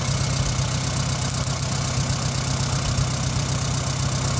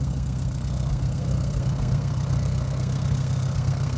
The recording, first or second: first